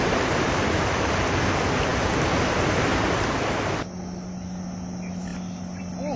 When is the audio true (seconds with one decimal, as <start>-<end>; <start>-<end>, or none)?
0.0-6.2